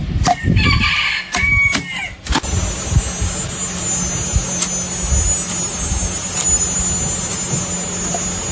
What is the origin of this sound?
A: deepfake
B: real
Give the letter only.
B